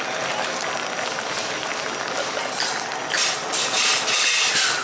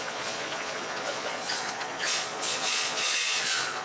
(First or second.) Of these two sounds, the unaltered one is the first